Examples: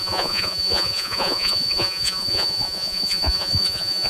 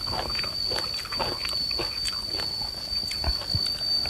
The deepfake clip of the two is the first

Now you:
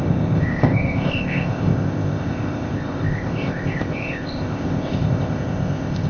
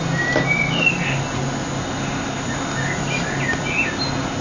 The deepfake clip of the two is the first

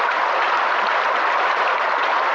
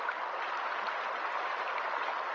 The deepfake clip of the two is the first